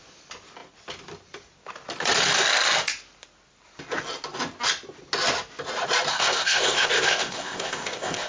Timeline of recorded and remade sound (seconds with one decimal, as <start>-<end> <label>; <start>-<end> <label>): 0.0-6.1 recorded; 6.1-8.3 remade